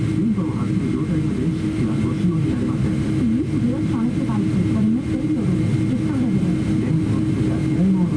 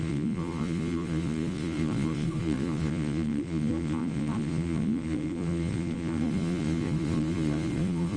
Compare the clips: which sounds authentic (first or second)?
first